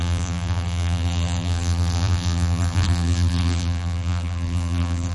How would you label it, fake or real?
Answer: fake